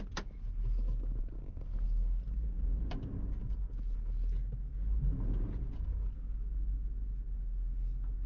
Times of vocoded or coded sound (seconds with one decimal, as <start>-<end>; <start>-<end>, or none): none